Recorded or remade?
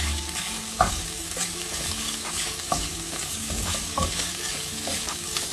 remade